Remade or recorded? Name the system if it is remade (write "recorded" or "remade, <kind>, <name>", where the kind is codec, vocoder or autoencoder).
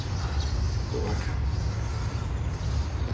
recorded